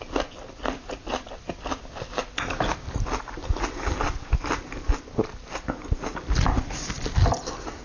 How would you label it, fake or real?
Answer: real